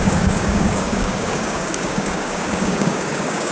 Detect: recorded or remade remade